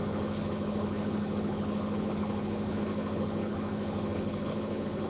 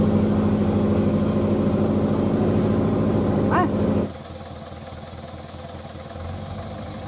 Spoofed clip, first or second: first